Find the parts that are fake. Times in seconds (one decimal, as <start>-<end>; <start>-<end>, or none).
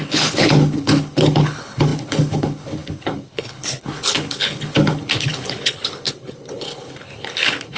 0.0-7.8